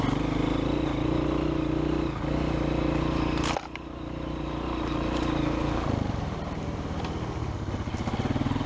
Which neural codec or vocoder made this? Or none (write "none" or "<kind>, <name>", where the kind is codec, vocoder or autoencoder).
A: none